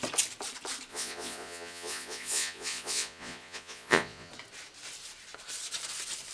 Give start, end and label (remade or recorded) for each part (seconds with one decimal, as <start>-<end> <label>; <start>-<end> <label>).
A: 0.0-0.9 recorded; 0.9-4.3 remade; 4.3-6.3 recorded